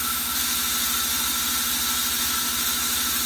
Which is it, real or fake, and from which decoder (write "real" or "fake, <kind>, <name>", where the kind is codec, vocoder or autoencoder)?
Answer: real